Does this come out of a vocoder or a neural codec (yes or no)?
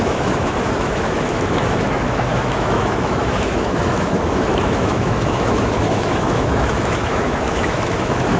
yes